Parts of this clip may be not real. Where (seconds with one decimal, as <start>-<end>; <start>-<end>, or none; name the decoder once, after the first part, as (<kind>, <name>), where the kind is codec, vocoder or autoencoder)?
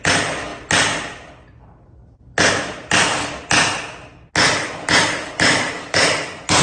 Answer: none